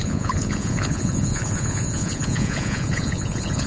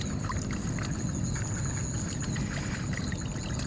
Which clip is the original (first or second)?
second